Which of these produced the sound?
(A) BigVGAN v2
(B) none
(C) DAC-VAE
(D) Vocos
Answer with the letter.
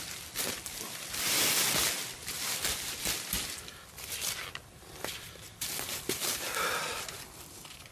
B